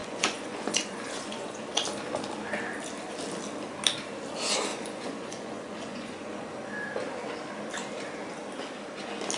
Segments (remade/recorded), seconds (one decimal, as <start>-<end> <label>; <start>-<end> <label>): 0.0-1.6 remade; 1.6-4.7 recorded; 4.7-6.5 remade; 6.5-9.4 recorded